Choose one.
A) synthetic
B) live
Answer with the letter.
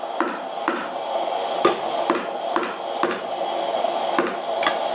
B